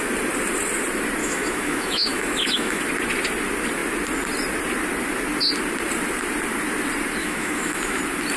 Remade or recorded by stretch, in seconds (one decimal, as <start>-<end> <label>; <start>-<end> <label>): 0.0-1.2 recorded; 1.2-2.8 remade; 2.8-7.2 recorded; 7.2-8.0 remade; 8.0-8.4 recorded